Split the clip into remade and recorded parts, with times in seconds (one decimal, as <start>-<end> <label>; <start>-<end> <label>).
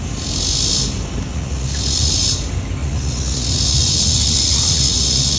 0.0-1.3 recorded; 1.3-2.1 remade; 2.1-2.8 recorded; 2.8-5.4 remade